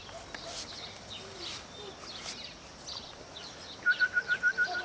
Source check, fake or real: real